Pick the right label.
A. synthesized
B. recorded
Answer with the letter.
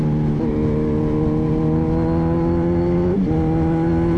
B